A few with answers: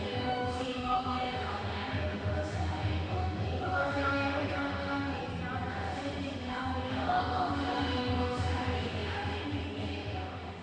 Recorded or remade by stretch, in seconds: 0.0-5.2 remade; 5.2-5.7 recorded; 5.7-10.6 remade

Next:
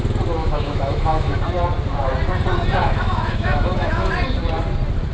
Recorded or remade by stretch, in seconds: 0.0-0.4 recorded; 0.4-1.4 remade; 1.4-2.8 recorded; 2.8-4.1 remade; 4.1-5.1 recorded

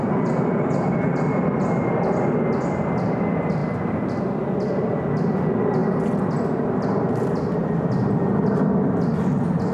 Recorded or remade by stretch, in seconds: 0.0-9.7 recorded

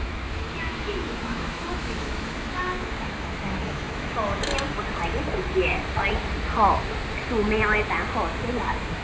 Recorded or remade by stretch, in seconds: 0.0-4.5 remade; 4.5-8.5 recorded; 8.5-9.0 remade

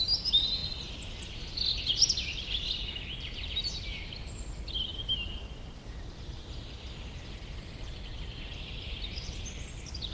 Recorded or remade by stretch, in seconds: 0.0-10.1 recorded